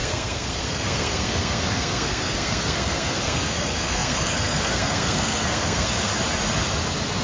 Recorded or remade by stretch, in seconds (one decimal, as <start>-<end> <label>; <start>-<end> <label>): 0.0-6.1 remade; 6.1-7.2 recorded